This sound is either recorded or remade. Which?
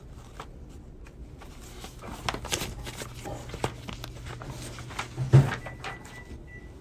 recorded